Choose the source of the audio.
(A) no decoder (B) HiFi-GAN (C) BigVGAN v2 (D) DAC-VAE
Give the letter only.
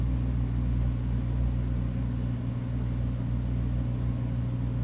A